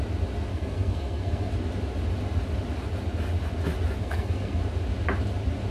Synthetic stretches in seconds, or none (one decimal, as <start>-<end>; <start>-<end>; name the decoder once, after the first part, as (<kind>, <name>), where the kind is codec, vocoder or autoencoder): 0.5-1.5 (codec, SNAC); 4.0-4.6